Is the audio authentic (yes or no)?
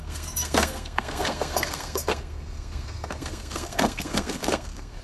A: no